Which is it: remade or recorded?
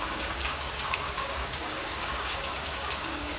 remade